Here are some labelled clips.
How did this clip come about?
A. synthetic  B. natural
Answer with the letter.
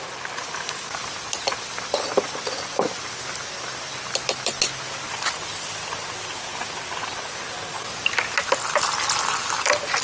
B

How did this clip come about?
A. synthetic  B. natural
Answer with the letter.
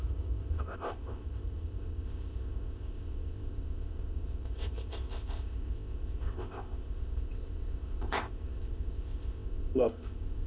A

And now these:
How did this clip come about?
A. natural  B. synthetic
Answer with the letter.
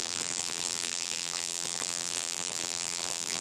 B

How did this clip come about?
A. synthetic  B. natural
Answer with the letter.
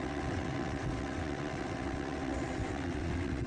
A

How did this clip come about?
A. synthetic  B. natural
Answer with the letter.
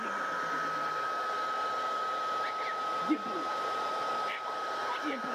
B